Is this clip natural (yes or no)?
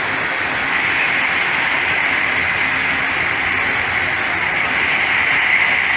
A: no